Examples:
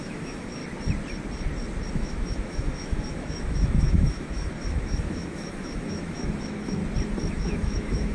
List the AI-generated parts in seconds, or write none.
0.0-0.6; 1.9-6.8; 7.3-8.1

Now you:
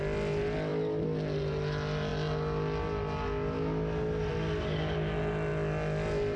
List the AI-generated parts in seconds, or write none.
none

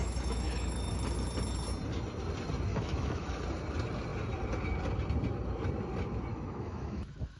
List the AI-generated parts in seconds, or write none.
0.0-0.9; 2.7-3.3; 6.3-7.4

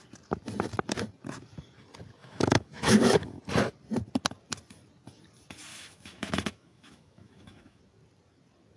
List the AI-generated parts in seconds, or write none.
2.2-3.4; 5.7-7.8

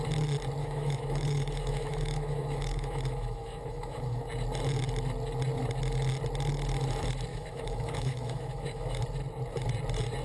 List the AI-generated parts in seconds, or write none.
0.6-4.3; 7.3-9.0

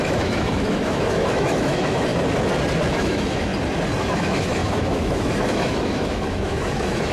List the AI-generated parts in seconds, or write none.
0.0-2.1; 2.9-3.5; 4.0-7.1

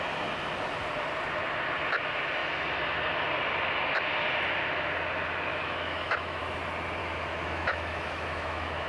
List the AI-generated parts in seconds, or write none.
5.5-6.4; 7.0-8.9

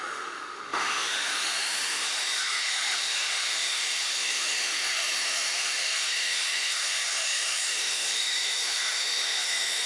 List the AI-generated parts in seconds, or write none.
0.0-9.9